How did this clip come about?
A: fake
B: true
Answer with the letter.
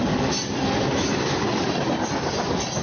B